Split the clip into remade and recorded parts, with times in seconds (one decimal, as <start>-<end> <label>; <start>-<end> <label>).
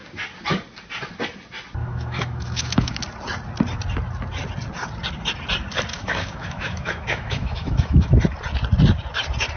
0.0-1.8 recorded; 1.8-3.0 remade; 3.0-5.9 recorded; 5.9-8.2 remade; 8.2-9.6 recorded